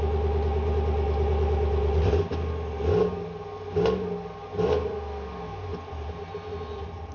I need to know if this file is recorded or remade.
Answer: recorded